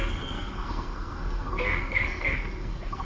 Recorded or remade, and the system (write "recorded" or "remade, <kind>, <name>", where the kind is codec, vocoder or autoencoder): remade, codec, SNAC